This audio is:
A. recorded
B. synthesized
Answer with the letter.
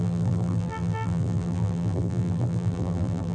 B